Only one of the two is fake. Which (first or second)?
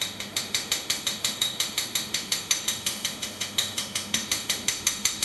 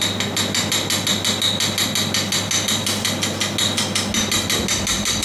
first